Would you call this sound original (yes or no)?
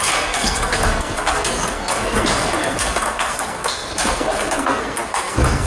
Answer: no